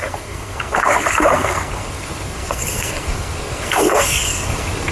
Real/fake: fake